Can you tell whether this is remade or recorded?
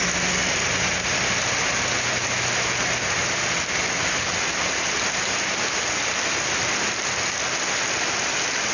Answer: recorded